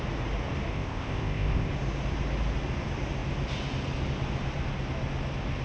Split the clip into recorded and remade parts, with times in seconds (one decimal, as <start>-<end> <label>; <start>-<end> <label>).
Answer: 0.0-0.7 recorded; 0.7-1.7 remade; 1.7-5.6 recorded